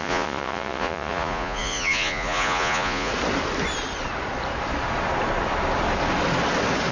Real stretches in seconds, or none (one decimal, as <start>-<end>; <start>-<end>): 3.1-6.9